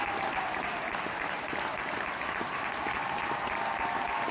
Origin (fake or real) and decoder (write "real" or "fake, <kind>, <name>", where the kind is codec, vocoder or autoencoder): real